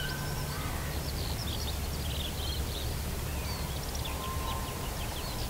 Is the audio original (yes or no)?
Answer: yes